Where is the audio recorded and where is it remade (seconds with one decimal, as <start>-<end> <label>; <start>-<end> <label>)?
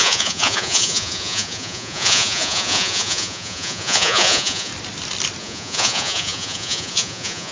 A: 0.0-4.7 remade; 4.7-5.4 recorded; 5.4-7.5 remade